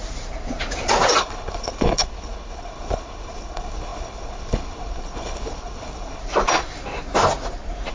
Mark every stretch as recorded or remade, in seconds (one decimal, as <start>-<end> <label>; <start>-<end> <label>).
0.0-1.2 recorded; 1.2-6.2 remade; 6.2-7.9 recorded